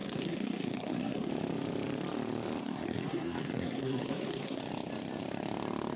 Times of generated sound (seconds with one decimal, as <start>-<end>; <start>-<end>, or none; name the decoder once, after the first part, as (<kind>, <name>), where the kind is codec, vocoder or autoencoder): 0.0-1.3 (codec, SNAC); 2.6-4.6